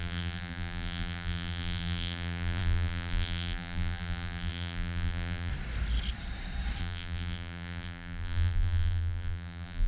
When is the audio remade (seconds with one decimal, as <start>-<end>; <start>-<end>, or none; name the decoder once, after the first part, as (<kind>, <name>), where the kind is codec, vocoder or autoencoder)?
0.0-5.5 (vocoder, BigVGAN v2); 6.8-9.9